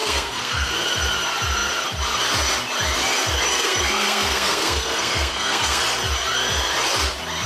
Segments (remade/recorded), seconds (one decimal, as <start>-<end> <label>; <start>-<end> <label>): 0.0-0.7 remade; 0.7-3.5 recorded; 3.5-5.8 remade; 5.8-7.5 recorded